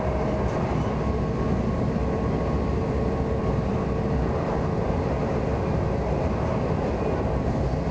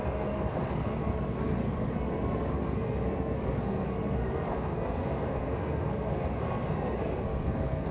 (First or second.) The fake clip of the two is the second